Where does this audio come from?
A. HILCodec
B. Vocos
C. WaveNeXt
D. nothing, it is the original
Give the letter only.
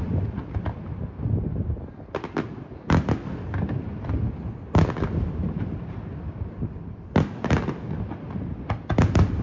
D